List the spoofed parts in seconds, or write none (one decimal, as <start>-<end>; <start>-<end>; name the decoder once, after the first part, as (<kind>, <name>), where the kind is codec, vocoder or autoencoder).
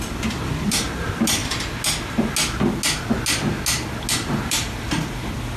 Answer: 0.0-1.4 (vocoder, BigVGAN v2); 4.1-5.6